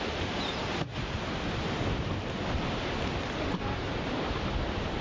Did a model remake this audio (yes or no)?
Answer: no